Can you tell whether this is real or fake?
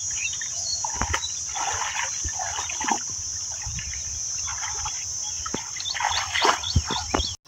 real